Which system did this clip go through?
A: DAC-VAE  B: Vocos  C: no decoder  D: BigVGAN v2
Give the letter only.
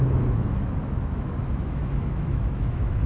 A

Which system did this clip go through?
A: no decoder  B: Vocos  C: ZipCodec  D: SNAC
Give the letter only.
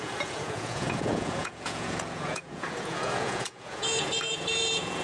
B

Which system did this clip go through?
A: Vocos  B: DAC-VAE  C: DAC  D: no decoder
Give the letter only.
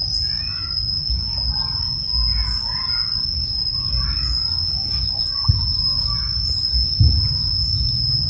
D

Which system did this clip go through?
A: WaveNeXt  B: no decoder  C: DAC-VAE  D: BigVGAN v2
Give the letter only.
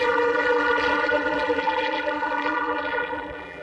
D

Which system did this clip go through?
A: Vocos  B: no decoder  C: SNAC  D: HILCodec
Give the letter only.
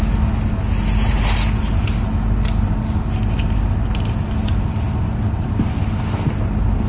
B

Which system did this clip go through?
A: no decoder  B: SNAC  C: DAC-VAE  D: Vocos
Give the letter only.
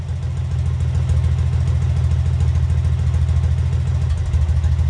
A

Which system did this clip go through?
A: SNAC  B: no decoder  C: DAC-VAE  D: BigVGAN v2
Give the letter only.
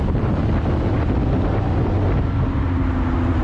B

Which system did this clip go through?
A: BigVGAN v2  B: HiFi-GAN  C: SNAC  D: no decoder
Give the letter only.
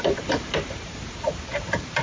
A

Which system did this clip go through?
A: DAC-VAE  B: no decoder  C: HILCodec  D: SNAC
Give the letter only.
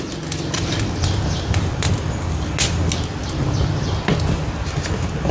B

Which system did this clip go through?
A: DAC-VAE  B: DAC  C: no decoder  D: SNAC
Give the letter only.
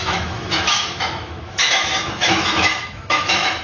A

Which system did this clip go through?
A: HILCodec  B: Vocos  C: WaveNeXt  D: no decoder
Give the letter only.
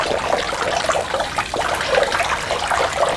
D